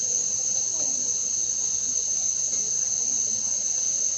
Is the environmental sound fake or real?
real